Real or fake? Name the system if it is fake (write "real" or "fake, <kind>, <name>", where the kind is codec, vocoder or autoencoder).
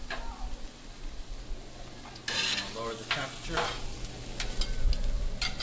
real